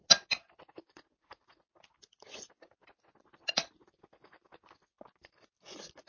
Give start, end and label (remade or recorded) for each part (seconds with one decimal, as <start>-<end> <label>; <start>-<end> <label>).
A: 0.0-6.1 recorded